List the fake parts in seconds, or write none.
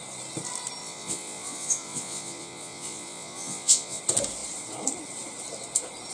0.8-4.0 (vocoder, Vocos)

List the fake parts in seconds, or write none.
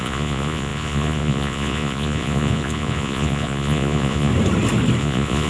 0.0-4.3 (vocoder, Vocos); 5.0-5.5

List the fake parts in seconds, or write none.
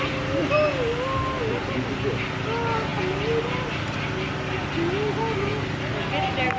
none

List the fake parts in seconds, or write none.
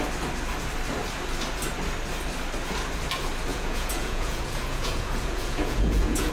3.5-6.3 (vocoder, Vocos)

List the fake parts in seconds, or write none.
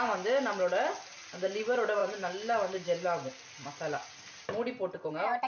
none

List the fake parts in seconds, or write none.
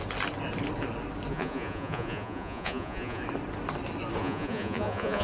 1.3-3.2 (vocoder, Vocos); 4.2-5.2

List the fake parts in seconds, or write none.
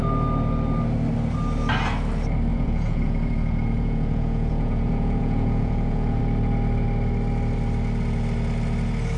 2.5-6.2 (vocoder, Vocos)